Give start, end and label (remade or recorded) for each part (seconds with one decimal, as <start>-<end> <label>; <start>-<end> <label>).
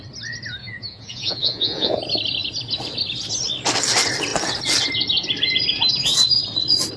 0.0-0.6 recorded; 0.6-2.0 remade; 2.0-7.0 recorded